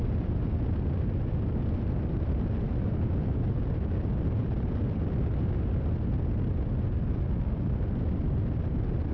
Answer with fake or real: real